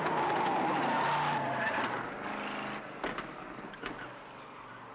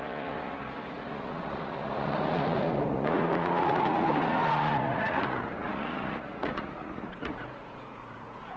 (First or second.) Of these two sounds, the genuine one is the first